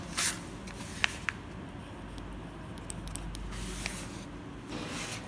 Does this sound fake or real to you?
real